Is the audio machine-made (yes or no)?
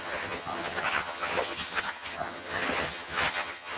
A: yes